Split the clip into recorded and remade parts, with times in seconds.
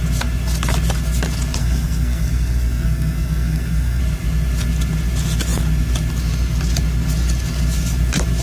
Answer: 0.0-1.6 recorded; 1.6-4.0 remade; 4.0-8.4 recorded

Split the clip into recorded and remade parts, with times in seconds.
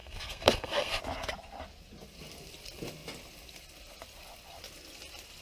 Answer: 0.0-1.0 remade; 1.0-5.4 recorded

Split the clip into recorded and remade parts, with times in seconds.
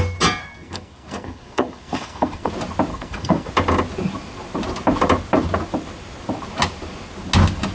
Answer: 0.0-0.4 recorded; 0.4-2.5 remade; 2.5-2.9 recorded; 2.9-3.5 remade; 3.5-7.7 recorded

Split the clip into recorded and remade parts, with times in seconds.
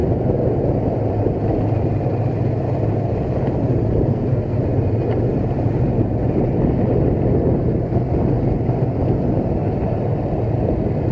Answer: 0.0-4.1 recorded; 4.1-4.6 remade; 4.6-11.1 recorded